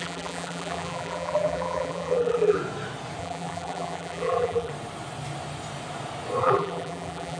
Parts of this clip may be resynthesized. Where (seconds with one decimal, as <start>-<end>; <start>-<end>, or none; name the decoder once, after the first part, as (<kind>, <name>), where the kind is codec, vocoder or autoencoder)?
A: 0.0-2.6 (vocoder, BigVGAN v2); 3.2-4.7; 6.4-7.4